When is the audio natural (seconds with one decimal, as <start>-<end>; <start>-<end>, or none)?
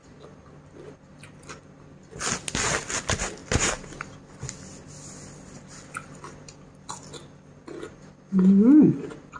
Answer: 0.0-9.4